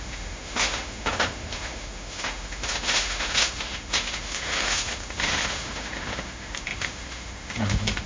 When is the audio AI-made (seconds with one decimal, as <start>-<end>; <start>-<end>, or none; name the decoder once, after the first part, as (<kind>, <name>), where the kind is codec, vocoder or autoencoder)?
0.0-8.1 (autoencoder, DAC-VAE)

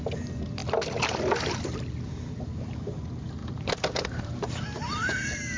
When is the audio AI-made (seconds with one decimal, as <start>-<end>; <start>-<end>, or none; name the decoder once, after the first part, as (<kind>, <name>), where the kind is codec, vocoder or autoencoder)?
3.4-4.5 (vocoder, BigVGAN v2)

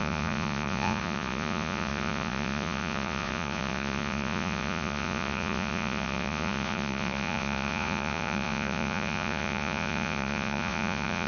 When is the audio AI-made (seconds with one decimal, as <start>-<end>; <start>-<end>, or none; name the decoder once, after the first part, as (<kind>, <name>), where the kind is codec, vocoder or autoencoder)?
0.0-11.3 (vocoder, Vocos)

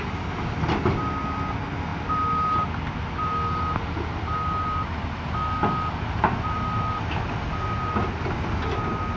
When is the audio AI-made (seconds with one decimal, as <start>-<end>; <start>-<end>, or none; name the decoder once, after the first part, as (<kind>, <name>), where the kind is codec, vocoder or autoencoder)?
none

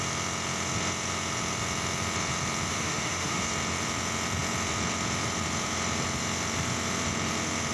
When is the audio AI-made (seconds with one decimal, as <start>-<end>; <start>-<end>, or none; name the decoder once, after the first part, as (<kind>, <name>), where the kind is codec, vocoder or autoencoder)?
2.7-3.4 (autoencoder, DAC-VAE)

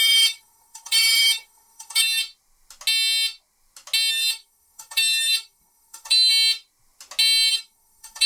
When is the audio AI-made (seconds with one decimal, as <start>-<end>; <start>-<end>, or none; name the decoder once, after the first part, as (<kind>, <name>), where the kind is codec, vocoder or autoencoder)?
0.0-2.2 (autoencoder, DAC-VAE); 4.1-6.3; 7.5-8.3

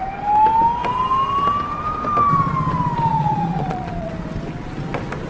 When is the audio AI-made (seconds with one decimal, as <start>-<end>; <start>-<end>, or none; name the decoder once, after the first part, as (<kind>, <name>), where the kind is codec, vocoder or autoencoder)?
3.1-4.1 (vocoder, Vocos)

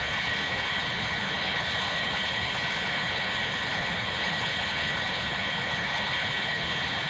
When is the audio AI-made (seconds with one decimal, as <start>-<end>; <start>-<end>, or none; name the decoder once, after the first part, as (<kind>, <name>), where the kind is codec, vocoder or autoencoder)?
0.0-7.1 (codec, HILCodec)